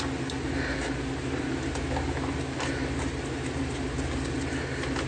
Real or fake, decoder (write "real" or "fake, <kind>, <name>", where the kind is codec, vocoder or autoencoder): real